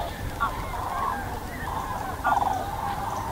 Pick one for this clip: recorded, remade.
recorded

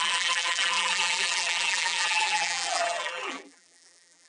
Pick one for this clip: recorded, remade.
remade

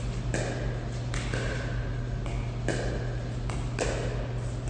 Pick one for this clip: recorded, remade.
recorded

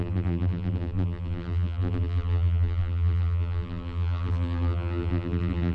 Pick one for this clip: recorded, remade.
remade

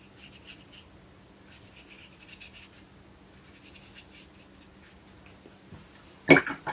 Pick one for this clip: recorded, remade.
recorded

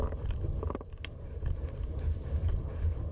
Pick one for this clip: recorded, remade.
recorded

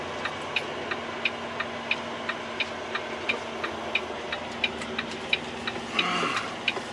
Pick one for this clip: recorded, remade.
recorded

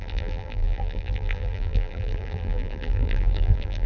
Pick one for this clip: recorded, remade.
remade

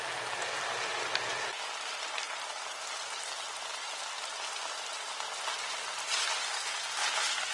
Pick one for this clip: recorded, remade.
remade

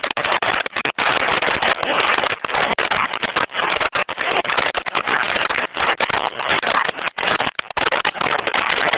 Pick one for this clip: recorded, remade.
remade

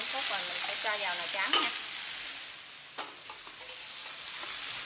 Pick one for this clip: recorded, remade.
recorded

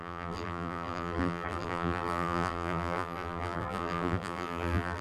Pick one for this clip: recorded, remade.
remade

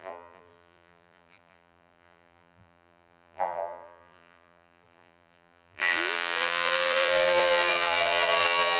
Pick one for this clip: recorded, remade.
remade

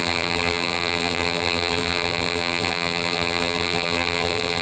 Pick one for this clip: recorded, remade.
remade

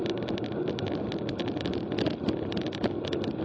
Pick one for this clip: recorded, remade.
recorded